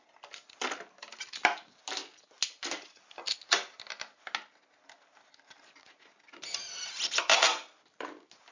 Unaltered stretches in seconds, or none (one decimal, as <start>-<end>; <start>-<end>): 0.0-8.5